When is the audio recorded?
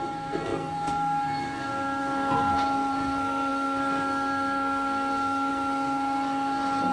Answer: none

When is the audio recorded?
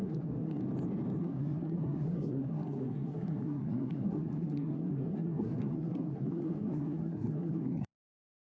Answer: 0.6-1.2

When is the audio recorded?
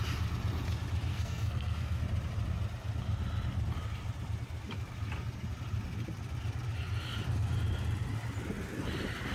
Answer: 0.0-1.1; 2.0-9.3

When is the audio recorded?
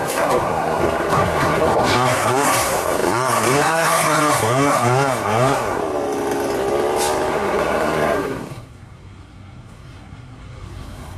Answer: 5.8-7.3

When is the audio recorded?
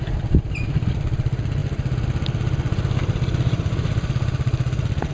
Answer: 0.0-5.1